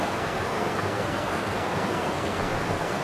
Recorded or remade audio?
remade